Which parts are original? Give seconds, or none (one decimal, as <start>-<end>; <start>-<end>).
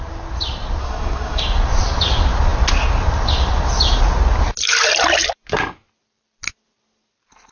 0.0-0.8; 1.4-7.5